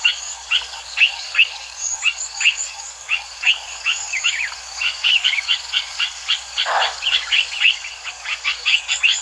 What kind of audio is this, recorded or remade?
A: remade